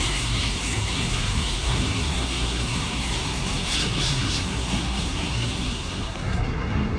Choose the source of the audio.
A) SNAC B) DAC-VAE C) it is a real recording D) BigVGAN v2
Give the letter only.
A